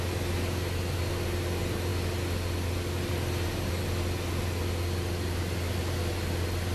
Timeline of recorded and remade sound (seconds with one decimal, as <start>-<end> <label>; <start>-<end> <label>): 0.0-6.7 recorded